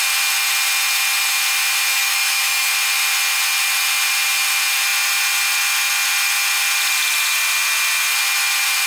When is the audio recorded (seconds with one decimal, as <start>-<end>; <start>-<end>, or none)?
0.0-1.9; 2.7-8.9